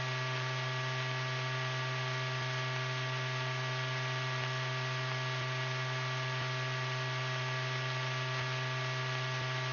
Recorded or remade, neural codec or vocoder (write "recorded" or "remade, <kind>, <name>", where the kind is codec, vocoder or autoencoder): recorded